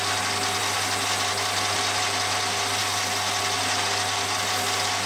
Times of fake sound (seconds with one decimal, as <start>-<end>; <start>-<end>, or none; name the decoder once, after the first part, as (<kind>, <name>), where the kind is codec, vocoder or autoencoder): none